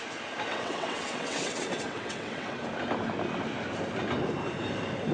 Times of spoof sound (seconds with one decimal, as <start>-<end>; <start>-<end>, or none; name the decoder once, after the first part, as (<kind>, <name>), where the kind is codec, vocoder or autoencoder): 0.5-2.6 (vocoder, WaveNeXt)

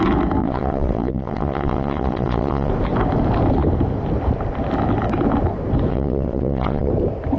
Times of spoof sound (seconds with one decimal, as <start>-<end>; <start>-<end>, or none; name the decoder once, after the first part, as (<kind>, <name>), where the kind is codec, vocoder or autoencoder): 0.4-2.7 (vocoder, WaveNeXt); 5.9-6.9

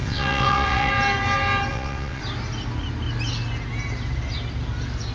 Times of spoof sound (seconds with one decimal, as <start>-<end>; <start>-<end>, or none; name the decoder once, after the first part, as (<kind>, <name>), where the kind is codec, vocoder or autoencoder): 0.0-0.9 (vocoder, WaveNeXt); 1.7-2.2

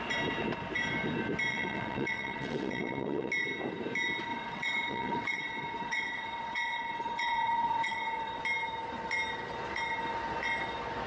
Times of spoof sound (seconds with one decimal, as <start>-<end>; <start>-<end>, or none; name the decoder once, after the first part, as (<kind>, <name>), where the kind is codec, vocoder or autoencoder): 1.5-3.3 (vocoder, WaveNeXt); 4.3-8.4